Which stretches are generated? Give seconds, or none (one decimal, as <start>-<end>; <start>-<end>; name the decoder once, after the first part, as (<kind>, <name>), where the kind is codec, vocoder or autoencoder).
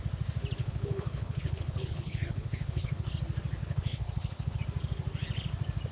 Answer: 0.6-3.1 (codec, HILCodec); 3.6-4.6